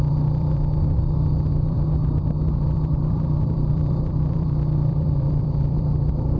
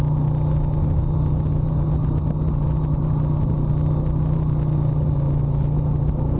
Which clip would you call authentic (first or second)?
second